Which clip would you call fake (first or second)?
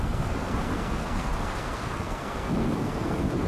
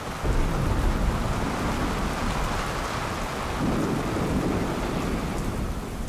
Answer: first